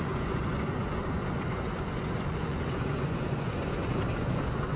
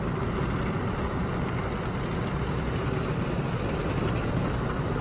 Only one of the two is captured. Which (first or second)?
second